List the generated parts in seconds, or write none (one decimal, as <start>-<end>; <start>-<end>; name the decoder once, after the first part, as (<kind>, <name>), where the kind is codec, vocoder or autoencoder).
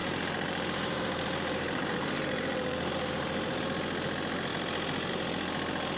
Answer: 0.0-3.6 (vocoder, BigVGAN v2)